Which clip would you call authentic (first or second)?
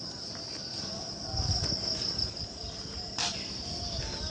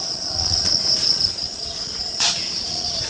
first